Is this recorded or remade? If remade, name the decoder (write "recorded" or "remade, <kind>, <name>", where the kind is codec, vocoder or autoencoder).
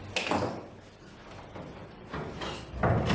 recorded